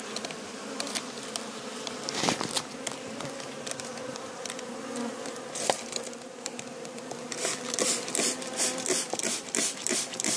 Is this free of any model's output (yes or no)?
no